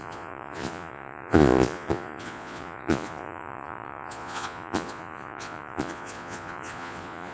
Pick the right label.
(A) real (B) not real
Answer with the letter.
B